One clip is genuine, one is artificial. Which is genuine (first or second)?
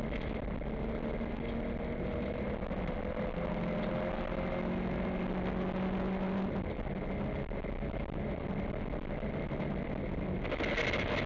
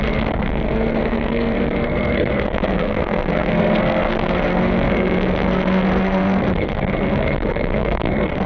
first